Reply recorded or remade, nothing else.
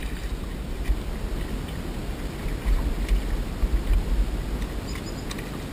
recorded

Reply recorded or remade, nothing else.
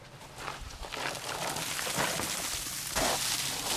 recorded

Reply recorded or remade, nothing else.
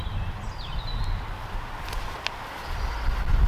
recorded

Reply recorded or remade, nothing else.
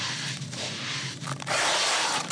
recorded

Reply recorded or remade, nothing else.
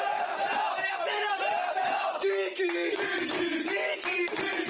remade